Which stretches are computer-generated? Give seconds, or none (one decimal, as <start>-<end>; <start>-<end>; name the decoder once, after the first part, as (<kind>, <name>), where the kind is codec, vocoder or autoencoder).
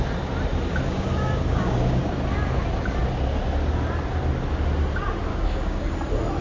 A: 0.5-2.0 (codec, DAC); 5.3-5.9